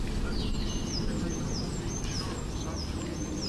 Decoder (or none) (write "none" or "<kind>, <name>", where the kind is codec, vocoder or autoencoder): none